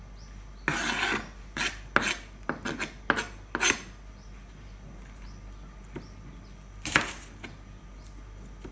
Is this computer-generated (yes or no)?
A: no